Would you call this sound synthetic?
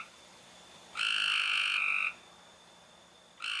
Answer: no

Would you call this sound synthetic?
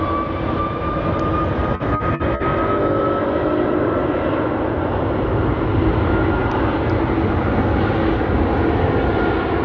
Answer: no